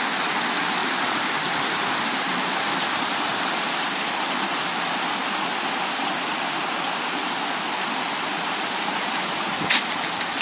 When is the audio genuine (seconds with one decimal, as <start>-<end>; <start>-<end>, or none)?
0.0-0.8; 3.8-10.4